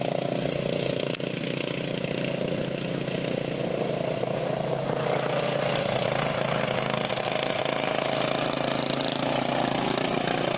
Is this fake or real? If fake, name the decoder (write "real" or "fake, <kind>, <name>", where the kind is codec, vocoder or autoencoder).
real